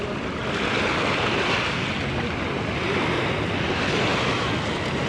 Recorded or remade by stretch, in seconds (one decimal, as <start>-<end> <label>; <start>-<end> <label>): 0.0-5.1 recorded